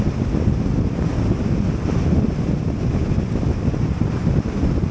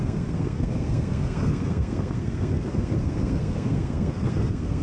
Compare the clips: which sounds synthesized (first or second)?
second